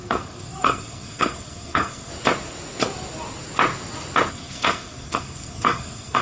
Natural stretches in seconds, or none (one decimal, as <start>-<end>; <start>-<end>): 2.1-4.3